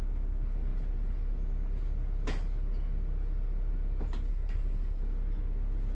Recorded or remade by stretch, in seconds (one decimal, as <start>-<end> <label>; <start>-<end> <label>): 0.0-4.3 recorded; 4.3-5.0 remade; 5.0-5.9 recorded